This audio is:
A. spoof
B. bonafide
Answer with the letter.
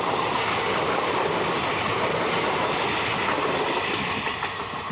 B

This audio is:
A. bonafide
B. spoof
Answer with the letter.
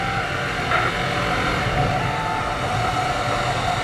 A